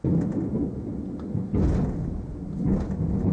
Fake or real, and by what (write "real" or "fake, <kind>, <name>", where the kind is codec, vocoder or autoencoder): real